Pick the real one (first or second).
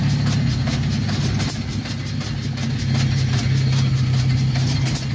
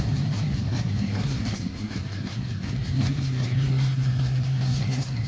first